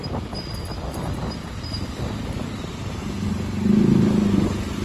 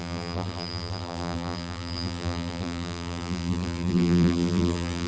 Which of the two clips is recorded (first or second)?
first